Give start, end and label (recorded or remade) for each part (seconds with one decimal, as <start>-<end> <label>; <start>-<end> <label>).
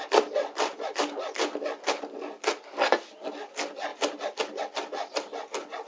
0.0-5.9 recorded